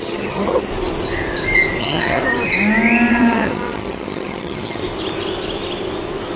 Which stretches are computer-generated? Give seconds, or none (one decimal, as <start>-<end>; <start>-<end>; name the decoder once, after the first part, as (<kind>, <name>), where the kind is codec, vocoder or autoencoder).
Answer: 0.0-0.7 (vocoder, HiFi-GAN); 1.8-2.2; 3.1-4.8